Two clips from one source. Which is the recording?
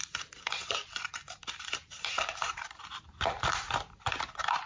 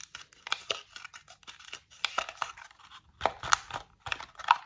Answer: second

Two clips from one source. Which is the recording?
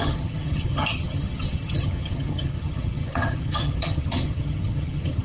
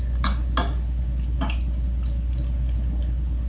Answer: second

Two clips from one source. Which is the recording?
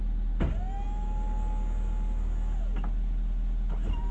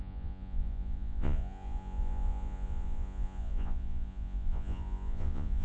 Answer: first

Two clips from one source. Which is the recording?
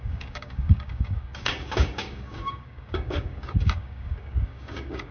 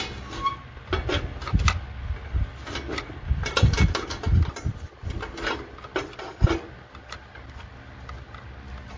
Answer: second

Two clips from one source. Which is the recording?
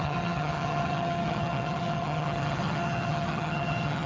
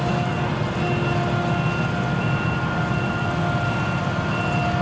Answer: second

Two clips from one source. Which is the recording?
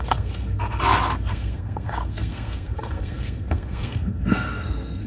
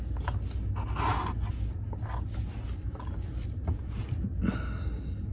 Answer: second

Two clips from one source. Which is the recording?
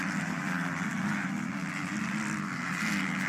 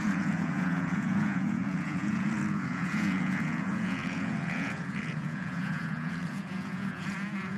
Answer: first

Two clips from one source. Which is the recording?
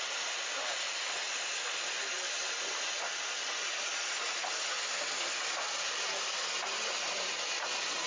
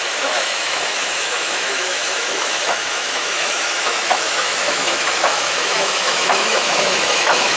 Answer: first